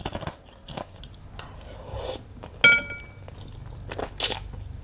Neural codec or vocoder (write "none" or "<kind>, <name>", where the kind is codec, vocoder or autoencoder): none